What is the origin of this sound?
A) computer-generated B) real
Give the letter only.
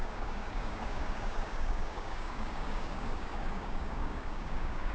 A